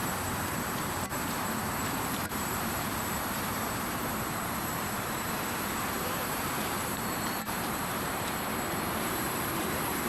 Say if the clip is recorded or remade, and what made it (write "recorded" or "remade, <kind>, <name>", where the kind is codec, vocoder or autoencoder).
remade, vocoder, BigVGAN v2